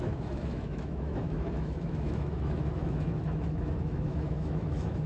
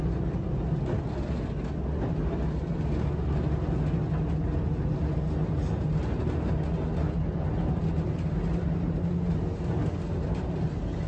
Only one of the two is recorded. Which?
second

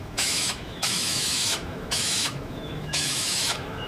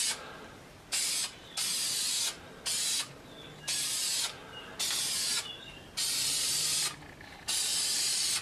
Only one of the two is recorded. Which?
second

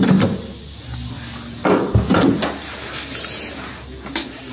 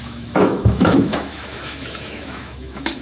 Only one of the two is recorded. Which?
first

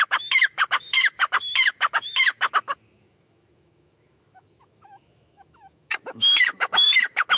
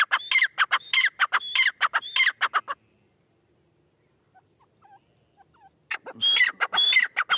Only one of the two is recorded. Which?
second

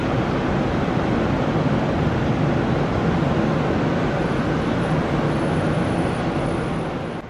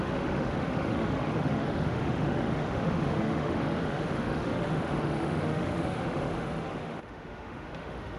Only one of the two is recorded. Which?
first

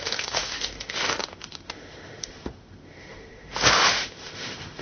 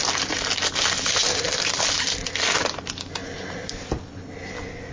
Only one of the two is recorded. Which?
second